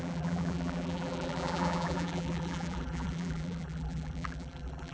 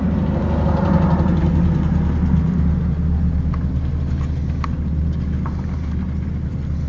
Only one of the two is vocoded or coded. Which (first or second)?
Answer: first